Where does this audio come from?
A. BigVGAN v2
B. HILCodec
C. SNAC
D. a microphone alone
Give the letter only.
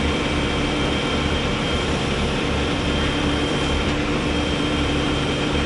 A